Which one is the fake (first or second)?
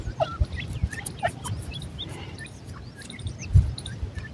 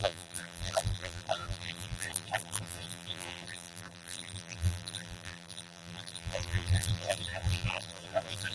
second